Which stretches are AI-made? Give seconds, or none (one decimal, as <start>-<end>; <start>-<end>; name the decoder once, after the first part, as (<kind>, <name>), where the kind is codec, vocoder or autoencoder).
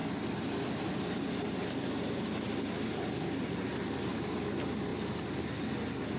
none